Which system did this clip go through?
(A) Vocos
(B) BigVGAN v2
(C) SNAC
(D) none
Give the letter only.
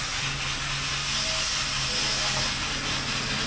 D